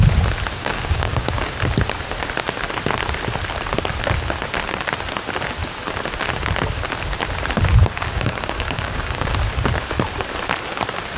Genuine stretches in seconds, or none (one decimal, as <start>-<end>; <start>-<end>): 0.0-0.6; 1.6-7.8; 9.3-11.2